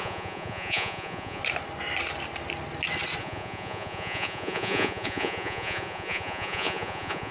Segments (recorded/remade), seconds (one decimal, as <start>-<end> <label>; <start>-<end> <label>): 0.0-1.4 remade; 1.4-3.2 recorded; 3.2-7.3 remade